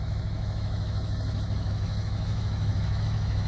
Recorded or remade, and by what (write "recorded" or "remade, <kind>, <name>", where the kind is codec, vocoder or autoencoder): remade, autoencoder, DAC-VAE